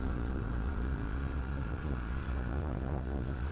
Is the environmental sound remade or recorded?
remade